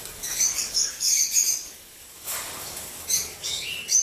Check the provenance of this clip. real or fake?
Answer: fake